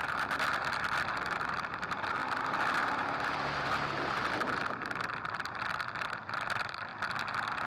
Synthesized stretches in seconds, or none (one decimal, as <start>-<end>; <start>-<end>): 0.0-2.2; 5.9-6.9